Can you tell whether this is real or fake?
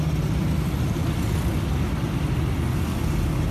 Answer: real